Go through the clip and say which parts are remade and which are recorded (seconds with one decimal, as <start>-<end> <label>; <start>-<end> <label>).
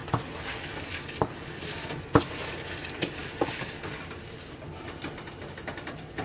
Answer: 0.0-6.2 recorded